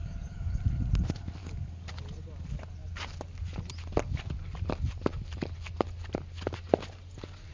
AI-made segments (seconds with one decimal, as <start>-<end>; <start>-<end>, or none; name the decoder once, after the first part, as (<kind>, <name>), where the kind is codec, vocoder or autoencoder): 0.0-0.6 (codec, DAC); 1.4-1.9